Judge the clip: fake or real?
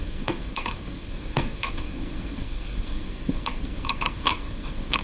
fake